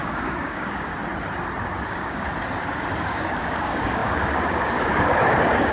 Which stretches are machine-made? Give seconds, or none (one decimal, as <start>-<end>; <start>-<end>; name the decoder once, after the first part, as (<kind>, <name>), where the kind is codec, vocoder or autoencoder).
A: 0.0-0.9 (codec, DAC); 1.8-2.3; 2.9-5.7